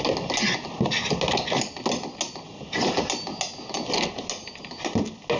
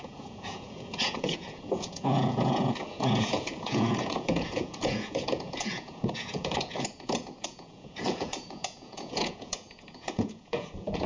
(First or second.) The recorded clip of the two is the first